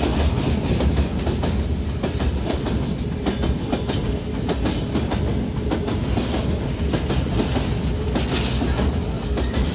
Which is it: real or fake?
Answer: real